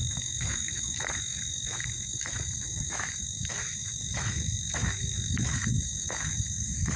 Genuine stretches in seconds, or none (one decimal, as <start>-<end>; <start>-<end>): none

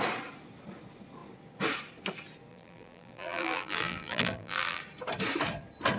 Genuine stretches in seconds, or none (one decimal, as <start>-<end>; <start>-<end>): 0.0-2.5; 4.8-6.0

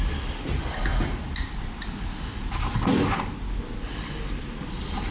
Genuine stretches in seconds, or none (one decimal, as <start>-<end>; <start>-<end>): 0.0-5.1